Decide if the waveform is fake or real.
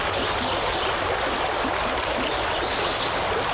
real